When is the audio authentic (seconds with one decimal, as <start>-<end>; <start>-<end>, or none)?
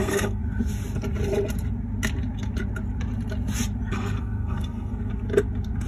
0.4-3.9; 5.1-5.9